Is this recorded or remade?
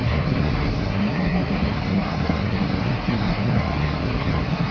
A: remade